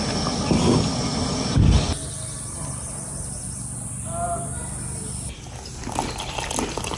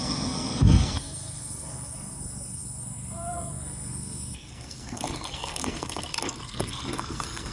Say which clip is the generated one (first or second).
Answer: second